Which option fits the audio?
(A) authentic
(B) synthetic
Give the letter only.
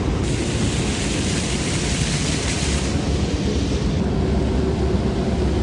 A